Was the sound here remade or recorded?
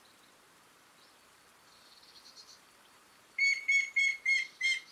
remade